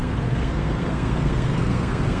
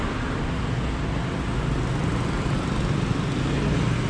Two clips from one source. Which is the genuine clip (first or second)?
second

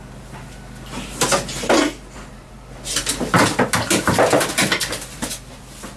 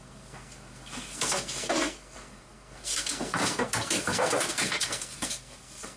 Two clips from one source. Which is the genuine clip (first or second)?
first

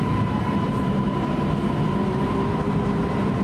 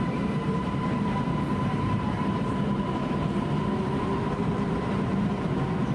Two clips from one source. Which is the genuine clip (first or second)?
first